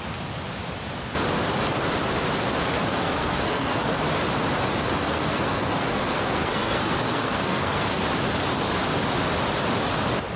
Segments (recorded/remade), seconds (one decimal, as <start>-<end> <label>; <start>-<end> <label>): 0.0-2.9 recorded; 2.9-4.0 remade; 4.0-5.0 recorded; 5.0-8.0 remade; 8.0-10.4 recorded